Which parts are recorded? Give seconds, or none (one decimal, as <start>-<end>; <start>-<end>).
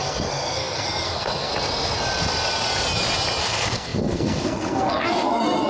1.5-3.4